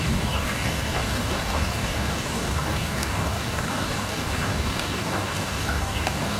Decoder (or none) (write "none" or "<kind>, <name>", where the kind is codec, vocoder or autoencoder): codec, DAC